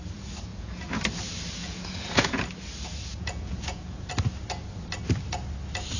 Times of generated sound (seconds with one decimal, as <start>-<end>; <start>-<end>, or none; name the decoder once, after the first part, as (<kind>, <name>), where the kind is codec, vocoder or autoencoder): 0.5-1.0 (vocoder, Vocos); 1.6-2.4; 3.1-4.1